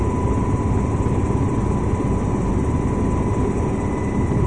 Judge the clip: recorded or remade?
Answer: recorded